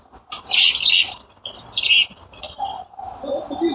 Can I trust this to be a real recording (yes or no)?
yes